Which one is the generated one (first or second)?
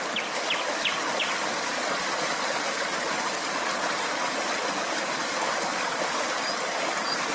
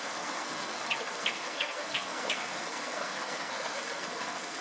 second